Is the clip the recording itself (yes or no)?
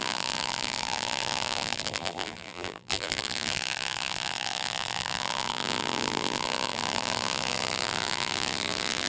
no